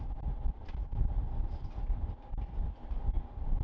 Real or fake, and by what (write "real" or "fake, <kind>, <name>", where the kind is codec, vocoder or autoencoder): real